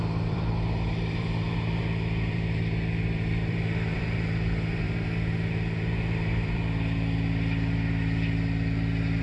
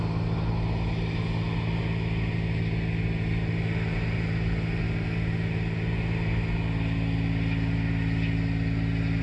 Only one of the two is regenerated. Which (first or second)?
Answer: first